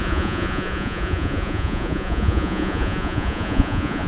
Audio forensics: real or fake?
fake